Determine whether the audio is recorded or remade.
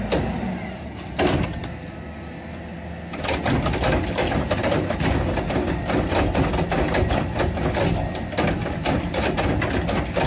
recorded